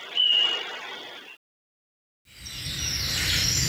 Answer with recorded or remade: recorded